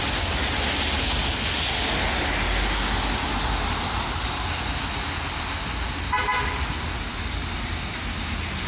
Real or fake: real